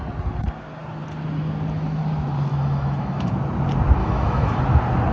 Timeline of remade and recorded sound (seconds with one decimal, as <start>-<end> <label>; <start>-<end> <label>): 0.0-2.5 recorded; 2.5-3.3 remade; 3.3-4.0 recorded; 4.0-4.6 remade; 4.6-5.1 recorded